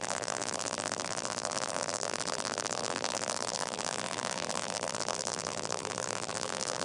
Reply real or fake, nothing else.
fake